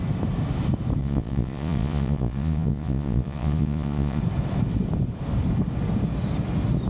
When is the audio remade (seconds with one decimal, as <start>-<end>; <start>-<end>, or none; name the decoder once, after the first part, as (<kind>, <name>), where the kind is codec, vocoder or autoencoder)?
1.0-4.2 (vocoder, Vocos)